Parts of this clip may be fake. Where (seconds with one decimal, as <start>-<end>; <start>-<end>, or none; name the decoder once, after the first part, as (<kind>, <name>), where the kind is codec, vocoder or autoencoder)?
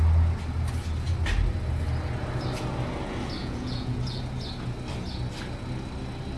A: 3.4-4.2 (vocoder, Vocos)